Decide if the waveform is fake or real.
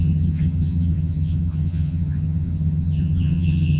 fake